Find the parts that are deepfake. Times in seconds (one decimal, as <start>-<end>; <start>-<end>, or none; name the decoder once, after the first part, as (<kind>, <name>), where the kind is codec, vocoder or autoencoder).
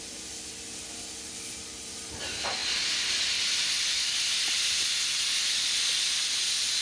none